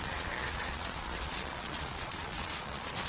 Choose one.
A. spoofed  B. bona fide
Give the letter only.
A